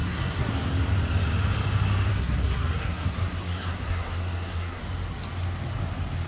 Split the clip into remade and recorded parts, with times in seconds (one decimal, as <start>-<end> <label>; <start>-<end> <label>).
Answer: 0.0-0.5 remade; 0.5-2.1 recorded; 2.1-4.8 remade; 4.8-6.3 recorded